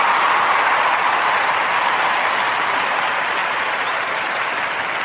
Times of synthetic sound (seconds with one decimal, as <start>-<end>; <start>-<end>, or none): none